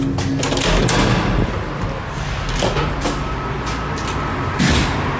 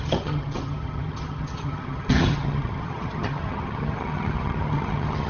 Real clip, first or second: first